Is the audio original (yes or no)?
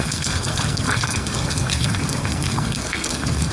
no